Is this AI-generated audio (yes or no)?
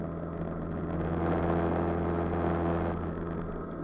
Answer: no